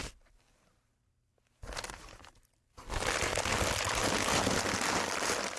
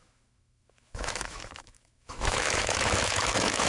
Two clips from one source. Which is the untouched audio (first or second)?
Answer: first